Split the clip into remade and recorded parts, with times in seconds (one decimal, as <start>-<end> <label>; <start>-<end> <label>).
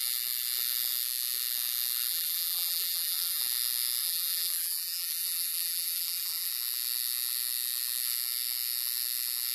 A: 0.0-2.1 recorded; 2.1-3.4 remade; 3.4-4.0 recorded; 4.0-6.5 remade; 6.5-9.5 recorded